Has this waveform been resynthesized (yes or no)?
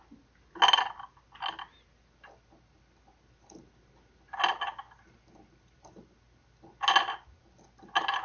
no